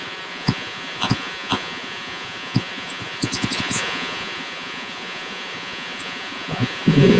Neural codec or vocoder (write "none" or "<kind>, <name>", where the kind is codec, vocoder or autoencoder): vocoder, Vocos